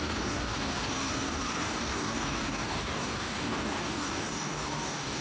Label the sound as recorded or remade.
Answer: remade